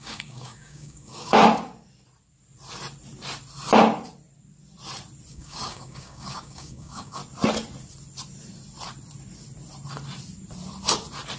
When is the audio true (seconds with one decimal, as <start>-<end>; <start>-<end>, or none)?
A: 1.4-5.3; 7.2-11.4